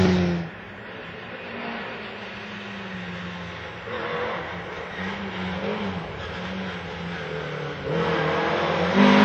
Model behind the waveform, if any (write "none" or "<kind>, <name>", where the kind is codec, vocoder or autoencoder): none